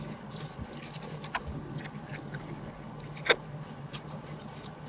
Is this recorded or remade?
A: recorded